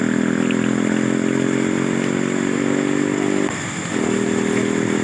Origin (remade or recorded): recorded